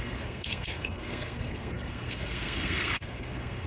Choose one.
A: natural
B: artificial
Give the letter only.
B